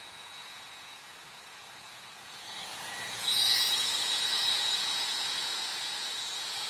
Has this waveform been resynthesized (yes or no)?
yes